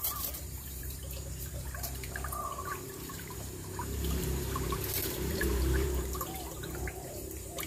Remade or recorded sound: remade